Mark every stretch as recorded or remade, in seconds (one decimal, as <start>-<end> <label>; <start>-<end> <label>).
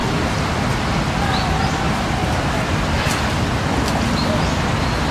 0.0-2.2 recorded; 2.2-3.9 remade; 3.9-5.1 recorded